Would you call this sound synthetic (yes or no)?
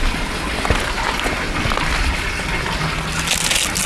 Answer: no